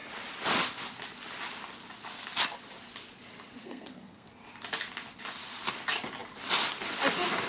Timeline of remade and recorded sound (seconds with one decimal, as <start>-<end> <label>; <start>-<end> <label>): 0.0-3.6 recorded; 3.6-4.3 remade; 4.3-7.5 recorded